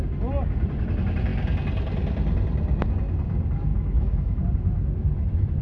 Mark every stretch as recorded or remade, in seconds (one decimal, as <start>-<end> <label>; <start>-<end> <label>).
0.0-3.7 recorded; 3.7-4.4 remade; 4.4-5.6 recorded